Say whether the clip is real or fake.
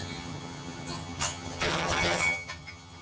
fake